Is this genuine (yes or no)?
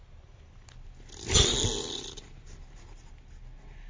yes